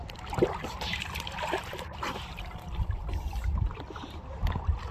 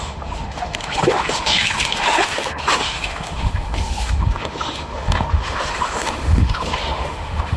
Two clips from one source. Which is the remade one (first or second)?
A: second